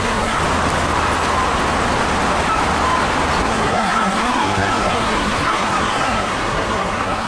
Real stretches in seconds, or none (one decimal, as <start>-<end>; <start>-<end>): 0.4-3.4

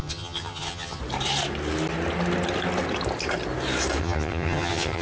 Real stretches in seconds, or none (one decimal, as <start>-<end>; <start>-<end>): 1.0-4.0

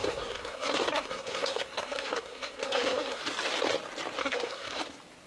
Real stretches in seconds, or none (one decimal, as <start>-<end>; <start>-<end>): 3.2-4.2; 4.8-5.3

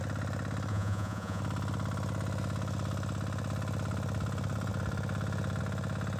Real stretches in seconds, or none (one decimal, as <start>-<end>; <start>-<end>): 0.0-0.7; 1.4-6.2

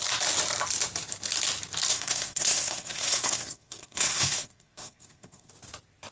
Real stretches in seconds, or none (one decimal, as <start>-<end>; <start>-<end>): 0.0-1.9; 5.5-6.1

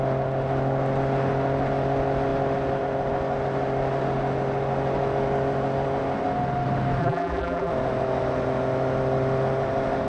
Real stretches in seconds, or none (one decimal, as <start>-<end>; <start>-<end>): 0.0-7.0; 7.7-10.1

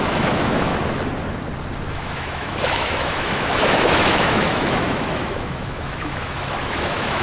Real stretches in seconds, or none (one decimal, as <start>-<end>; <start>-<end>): 0.7-1.9